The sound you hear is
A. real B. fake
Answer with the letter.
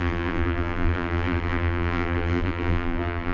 B